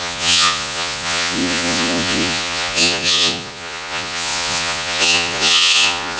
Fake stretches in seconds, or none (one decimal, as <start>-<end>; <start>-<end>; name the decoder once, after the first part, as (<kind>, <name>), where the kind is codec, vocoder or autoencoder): 0.0-6.2 (vocoder, Vocos)